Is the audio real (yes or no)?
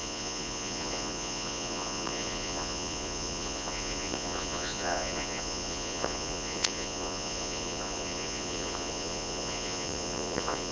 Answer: no